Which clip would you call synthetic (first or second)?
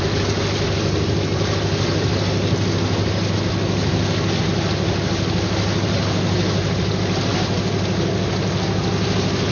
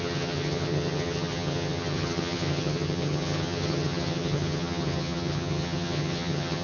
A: second